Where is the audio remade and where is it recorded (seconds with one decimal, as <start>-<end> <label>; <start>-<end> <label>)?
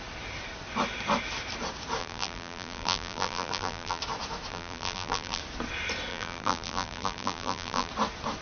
0.0-2.0 recorded; 2.0-4.0 remade; 4.0-4.5 recorded; 4.5-5.4 remade; 5.4-6.1 recorded; 6.1-7.9 remade; 7.9-8.4 recorded